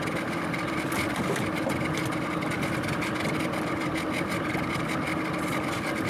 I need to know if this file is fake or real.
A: real